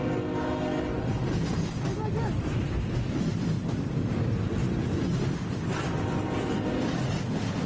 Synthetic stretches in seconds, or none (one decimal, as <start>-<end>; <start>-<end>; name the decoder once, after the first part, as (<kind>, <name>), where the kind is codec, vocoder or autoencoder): 4.6-5.3 (vocoder, Vocos)